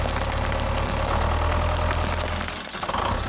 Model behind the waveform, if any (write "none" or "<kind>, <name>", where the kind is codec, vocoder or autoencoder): none